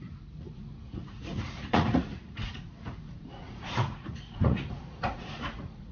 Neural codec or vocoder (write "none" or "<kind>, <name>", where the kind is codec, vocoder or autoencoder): vocoder, Vocos